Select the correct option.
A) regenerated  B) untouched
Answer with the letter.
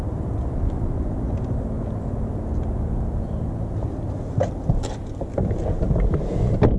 B